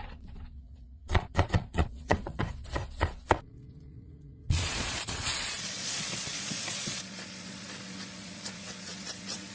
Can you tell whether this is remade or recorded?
remade